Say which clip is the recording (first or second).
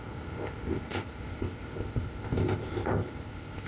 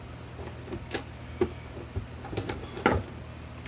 second